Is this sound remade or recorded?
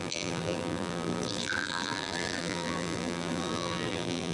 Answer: remade